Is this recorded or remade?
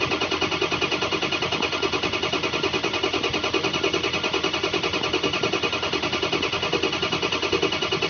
remade